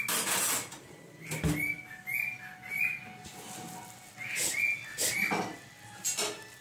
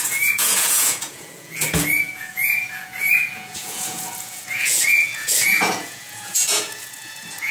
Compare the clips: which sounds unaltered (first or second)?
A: first